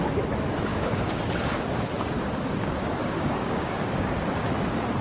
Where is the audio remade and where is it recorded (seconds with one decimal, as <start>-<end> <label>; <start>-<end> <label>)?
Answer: 0.0-0.7 recorded; 0.7-1.3 remade; 1.3-1.9 recorded; 1.9-4.1 remade; 4.1-5.0 recorded